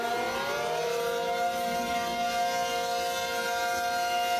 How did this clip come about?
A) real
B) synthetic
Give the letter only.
A